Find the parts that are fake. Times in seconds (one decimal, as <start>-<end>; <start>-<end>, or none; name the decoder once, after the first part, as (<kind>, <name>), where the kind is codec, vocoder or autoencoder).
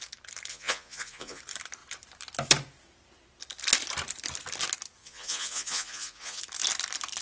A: 0.5-1.4 (vocoder, Vocos); 5.0-6.4